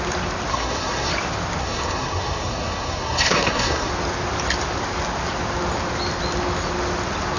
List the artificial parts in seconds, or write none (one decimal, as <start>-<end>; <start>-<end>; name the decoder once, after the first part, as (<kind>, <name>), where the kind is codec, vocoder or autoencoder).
0.5-1.1 (codec, SNAC); 1.6-3.9